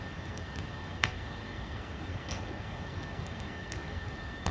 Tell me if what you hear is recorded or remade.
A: remade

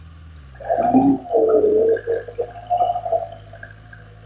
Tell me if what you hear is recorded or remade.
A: recorded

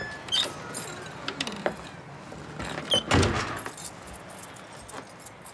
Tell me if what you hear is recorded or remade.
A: recorded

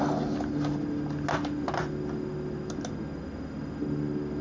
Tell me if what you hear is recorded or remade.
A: recorded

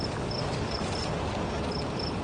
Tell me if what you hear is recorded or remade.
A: recorded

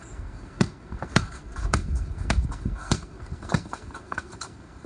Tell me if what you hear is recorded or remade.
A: remade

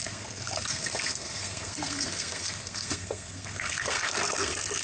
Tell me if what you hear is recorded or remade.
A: remade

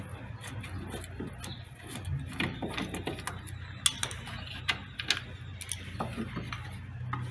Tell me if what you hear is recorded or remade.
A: recorded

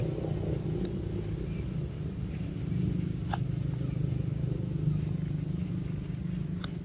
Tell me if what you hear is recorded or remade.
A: recorded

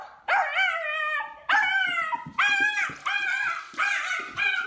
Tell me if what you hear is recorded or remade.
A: recorded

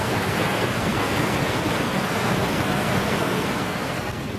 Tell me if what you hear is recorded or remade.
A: remade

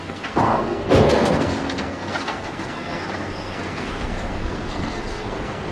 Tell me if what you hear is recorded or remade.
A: remade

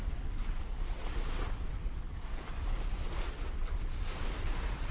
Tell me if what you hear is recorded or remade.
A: recorded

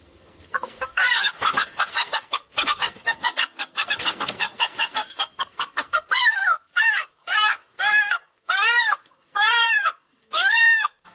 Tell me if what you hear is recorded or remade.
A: remade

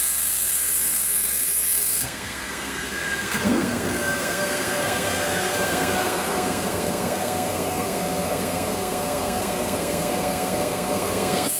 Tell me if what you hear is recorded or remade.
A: remade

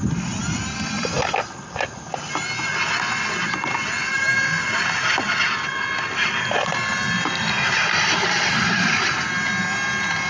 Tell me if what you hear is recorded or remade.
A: recorded